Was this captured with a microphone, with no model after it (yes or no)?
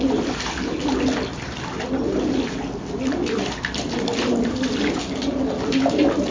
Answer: yes